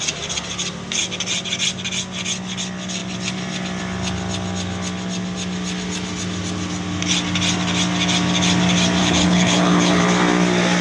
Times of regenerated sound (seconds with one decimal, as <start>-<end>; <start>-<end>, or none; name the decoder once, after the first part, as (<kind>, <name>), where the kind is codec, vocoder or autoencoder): 9.0-10.0 (codec, HILCodec)